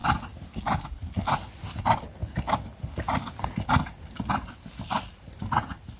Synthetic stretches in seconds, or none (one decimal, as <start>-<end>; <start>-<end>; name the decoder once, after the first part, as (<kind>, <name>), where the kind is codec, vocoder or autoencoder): none